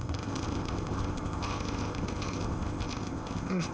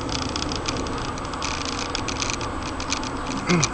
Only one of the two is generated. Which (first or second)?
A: first